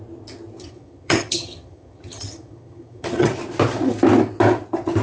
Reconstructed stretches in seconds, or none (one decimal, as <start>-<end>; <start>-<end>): 0.6-3.3